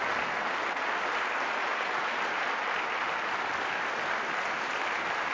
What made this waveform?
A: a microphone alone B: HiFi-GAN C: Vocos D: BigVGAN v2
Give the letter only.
A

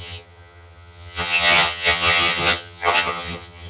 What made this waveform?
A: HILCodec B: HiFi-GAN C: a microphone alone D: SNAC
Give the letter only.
B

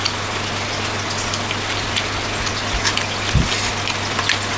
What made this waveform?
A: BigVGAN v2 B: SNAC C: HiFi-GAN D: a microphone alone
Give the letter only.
D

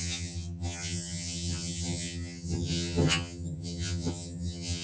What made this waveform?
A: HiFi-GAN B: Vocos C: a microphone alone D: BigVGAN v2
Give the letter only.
A